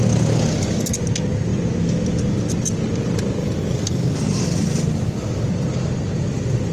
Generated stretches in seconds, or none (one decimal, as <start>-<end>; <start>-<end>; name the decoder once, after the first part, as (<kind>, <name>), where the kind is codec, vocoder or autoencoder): none